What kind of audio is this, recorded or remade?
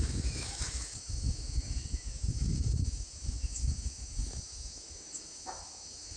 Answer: remade